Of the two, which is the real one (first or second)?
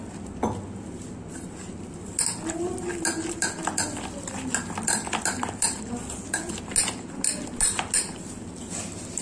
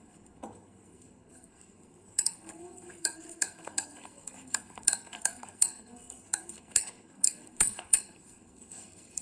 first